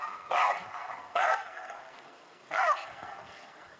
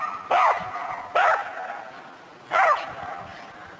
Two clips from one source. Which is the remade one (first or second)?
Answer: first